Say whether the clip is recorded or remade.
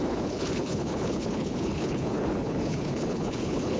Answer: remade